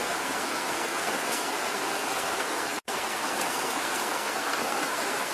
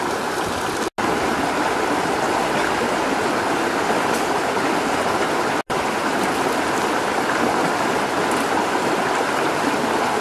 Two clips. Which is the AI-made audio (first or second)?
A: first